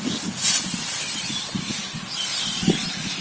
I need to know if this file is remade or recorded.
recorded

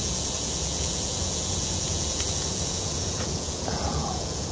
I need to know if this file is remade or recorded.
remade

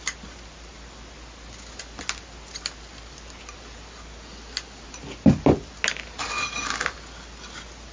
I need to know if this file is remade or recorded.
recorded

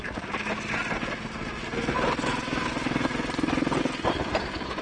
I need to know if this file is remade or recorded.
recorded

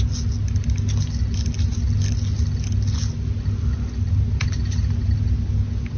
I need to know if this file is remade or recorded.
recorded